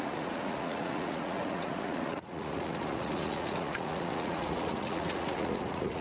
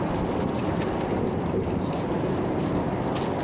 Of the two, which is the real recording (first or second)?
second